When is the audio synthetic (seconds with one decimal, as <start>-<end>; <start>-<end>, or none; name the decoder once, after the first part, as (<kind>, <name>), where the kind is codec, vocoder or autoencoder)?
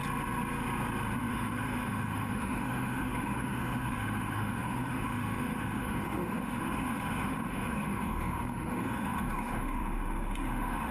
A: 1.3-10.9 (autoencoder, DAC-VAE)